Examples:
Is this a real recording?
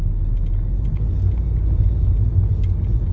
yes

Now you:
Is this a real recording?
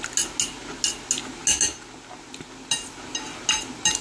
yes